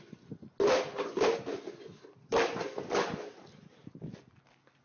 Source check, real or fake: real